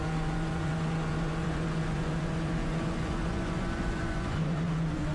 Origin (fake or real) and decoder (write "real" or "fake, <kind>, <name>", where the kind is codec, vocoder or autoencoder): fake, vocoder, Vocos